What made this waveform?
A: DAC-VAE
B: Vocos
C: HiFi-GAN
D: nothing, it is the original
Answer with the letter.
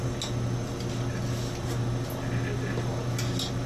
D